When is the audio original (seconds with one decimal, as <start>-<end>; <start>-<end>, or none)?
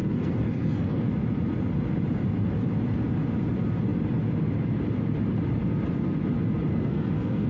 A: 1.1-6.7